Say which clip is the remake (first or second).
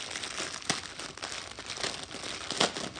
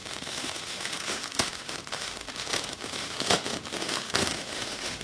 second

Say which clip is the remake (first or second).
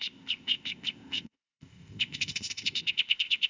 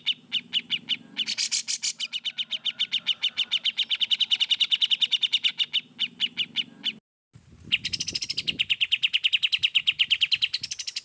first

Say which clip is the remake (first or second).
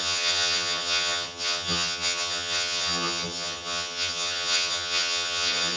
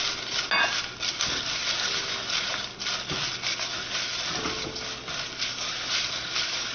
first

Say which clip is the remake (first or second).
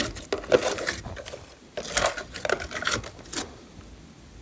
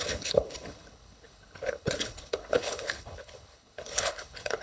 second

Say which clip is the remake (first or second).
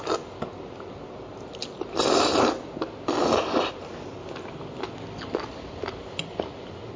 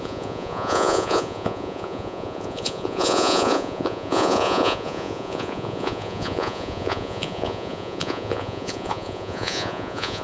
second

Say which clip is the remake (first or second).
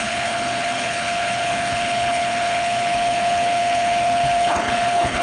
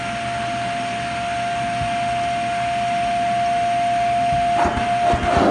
first